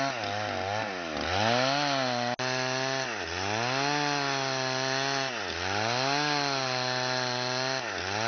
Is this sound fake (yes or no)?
no